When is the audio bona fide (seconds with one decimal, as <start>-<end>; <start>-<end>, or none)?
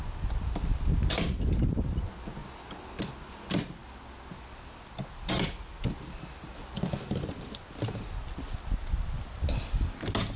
0.0-10.4